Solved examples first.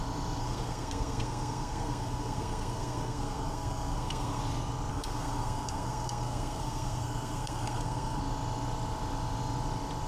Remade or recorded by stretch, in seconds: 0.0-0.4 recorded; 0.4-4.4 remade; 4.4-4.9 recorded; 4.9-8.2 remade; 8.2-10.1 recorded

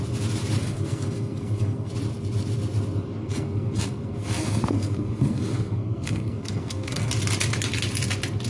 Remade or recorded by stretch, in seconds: 0.0-0.6 recorded; 0.6-1.9 remade; 1.9-3.2 recorded; 3.2-7.1 remade; 7.1-8.5 recorded

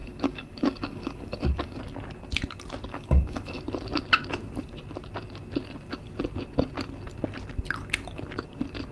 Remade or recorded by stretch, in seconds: 0.0-1.8 remade; 1.8-2.9 recorded; 2.9-3.6 remade; 3.6-8.9 recorded

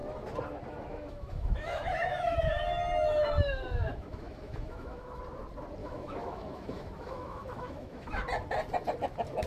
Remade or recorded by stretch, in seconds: 0.0-0.9 recorded; 0.9-5.2 remade; 5.2-5.8 recorded; 5.8-8.2 remade; 8.2-9.5 recorded